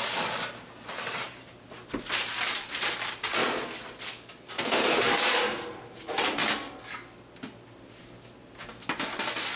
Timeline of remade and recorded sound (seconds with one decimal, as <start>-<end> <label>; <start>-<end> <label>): 0.0-3.4 remade; 3.4-4.6 recorded; 4.6-6.4 remade; 6.4-9.6 recorded